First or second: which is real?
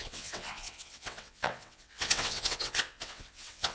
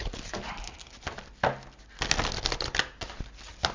second